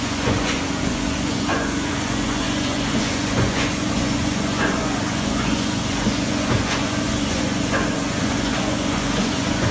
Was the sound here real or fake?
fake